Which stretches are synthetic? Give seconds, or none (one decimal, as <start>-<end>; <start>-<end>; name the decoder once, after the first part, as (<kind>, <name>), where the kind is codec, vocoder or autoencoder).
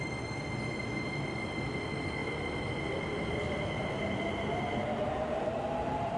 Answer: 2.2-6.2 (vocoder, BigVGAN v2)